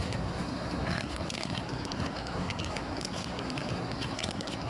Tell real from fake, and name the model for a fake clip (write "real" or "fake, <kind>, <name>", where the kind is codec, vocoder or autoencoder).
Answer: fake, codec, SNAC